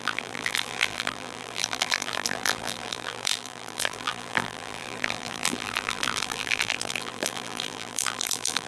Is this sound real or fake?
fake